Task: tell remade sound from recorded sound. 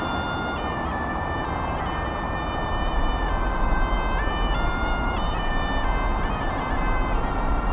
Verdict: recorded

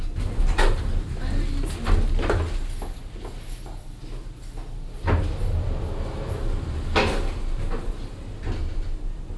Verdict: recorded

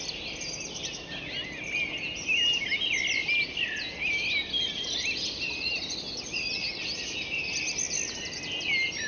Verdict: recorded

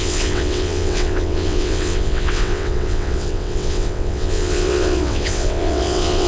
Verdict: remade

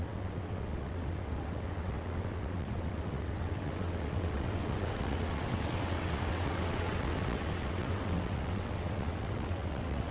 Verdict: remade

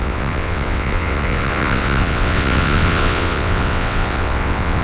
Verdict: remade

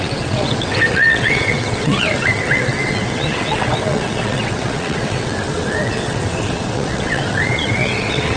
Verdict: remade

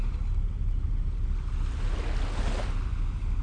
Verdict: recorded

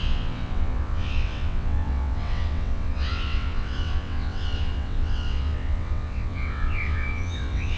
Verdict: remade